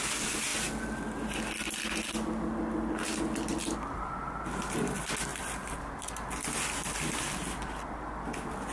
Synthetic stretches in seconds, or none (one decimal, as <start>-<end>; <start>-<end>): 5.3-7.3